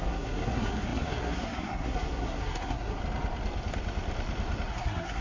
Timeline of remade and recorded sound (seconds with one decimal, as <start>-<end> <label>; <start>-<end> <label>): 0.0-3.0 remade; 3.0-4.7 recorded; 4.7-5.2 remade